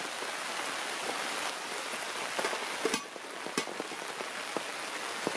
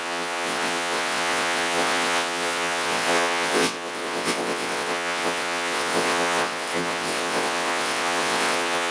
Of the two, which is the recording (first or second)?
first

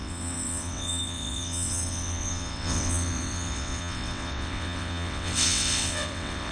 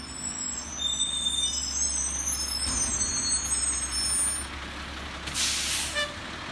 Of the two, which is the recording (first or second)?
second